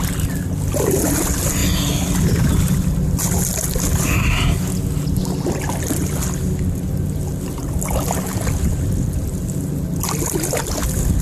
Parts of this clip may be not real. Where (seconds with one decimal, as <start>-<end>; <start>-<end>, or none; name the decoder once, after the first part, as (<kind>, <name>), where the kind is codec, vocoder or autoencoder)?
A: none